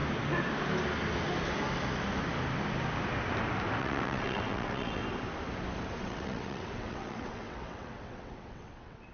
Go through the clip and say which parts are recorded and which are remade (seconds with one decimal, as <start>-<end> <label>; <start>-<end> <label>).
0.0-3.8 recorded; 3.8-5.0 remade; 5.0-6.0 recorded; 6.0-9.1 remade